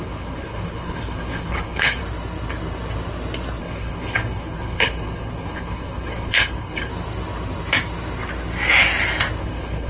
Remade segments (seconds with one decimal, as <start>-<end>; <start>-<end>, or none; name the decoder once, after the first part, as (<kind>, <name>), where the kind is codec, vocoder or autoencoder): 0.0-2.0 (codec, HILCodec); 3.6-6.9; 9.4-9.9

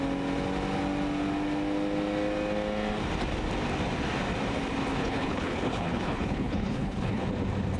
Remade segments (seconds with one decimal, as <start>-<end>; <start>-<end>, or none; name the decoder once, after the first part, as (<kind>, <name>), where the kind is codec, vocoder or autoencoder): 5.0-7.2 (codec, HILCodec)

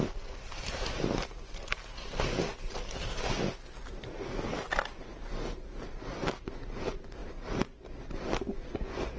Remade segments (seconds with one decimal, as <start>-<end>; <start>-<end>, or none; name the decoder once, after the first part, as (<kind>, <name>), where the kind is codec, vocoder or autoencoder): none

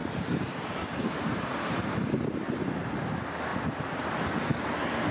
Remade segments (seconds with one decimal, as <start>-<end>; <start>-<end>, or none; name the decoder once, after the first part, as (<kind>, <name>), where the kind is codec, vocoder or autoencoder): 0.0-3.1 (vocoder, BigVGAN v2); 3.5-4.3

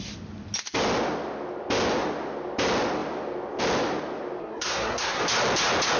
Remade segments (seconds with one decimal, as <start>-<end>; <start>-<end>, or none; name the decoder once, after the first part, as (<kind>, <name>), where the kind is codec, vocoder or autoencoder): 4.4-5.2 (codec, SNAC)

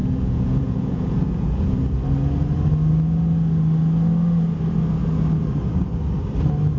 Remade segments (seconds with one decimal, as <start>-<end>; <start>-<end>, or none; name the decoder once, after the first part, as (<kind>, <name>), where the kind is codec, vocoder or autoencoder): 0.0-1.8 (vocoder, Vocos)

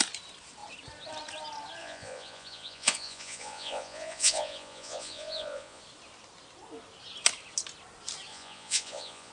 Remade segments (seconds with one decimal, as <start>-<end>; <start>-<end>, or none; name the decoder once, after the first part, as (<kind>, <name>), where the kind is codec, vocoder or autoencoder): 1.8-5.8 (vocoder, Vocos); 8.3-9.3

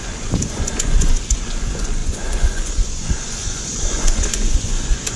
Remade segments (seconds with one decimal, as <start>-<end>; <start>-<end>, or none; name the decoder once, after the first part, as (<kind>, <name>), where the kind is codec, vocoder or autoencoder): 0.0-5.2 (vocoder, Vocos)